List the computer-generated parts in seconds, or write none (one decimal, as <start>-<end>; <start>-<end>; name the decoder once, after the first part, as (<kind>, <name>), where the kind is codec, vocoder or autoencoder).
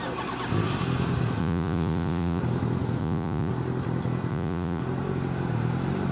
1.4-2.4 (vocoder, Vocos); 3.0-3.5; 4.3-4.8